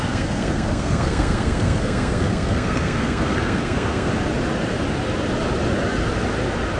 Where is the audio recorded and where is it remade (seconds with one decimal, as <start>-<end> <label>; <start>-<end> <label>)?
0.0-4.1 remade; 4.1-6.8 recorded